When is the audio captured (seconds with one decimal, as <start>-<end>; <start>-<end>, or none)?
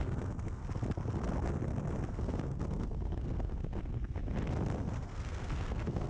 0.6-2.1; 4.2-4.9